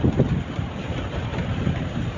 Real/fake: real